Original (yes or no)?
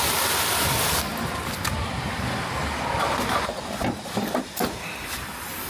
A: no